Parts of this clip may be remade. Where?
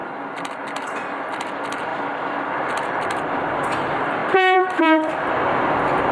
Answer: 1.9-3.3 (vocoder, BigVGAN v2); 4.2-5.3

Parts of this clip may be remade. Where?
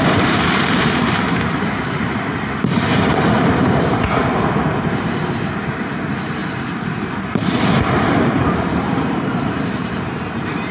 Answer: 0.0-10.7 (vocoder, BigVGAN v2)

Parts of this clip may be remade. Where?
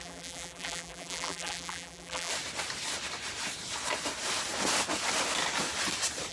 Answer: 0.0-2.3 (vocoder, BigVGAN v2)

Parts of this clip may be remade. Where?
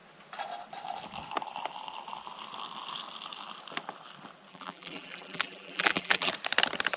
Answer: 4.5-6.3 (vocoder, BigVGAN v2)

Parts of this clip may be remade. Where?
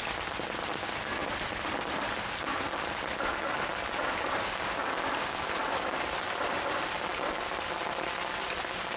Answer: none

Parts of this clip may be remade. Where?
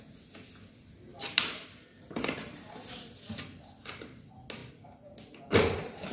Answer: 1.1-3.1 (vocoder, BigVGAN v2)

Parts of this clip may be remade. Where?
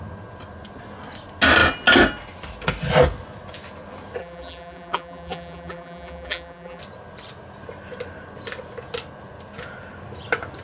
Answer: 4.2-6.8 (vocoder, BigVGAN v2)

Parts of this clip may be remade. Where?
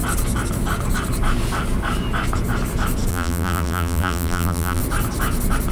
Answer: 3.1-4.8 (vocoder, BigVGAN v2)